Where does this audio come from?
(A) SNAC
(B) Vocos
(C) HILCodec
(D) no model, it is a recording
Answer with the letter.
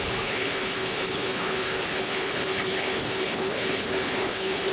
C